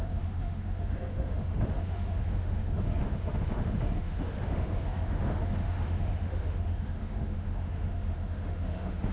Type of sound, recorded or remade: remade